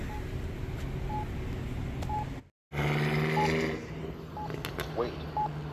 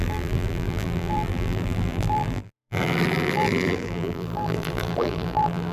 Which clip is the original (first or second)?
first